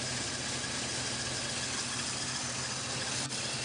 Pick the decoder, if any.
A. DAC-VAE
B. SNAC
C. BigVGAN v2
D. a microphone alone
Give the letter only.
D